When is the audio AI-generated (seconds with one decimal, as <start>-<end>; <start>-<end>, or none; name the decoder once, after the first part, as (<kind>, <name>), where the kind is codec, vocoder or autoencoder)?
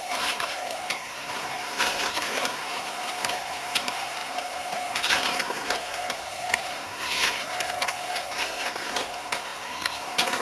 0.0-10.4 (codec, SNAC)